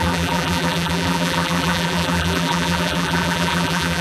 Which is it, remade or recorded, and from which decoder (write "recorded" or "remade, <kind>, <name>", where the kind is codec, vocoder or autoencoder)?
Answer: remade, vocoder, BigVGAN v2